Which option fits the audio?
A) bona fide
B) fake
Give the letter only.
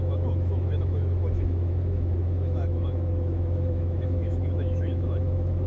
B